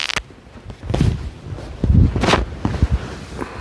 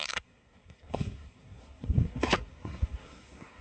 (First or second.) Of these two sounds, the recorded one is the first